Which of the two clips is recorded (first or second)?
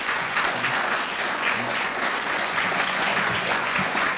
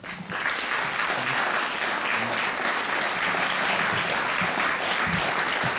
second